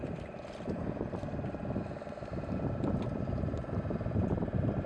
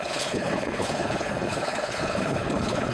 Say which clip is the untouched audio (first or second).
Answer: first